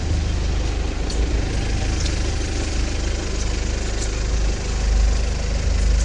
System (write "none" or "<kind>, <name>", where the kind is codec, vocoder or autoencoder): none